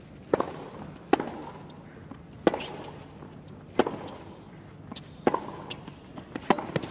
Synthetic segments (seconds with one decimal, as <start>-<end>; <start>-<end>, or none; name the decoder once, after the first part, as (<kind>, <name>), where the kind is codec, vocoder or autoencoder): none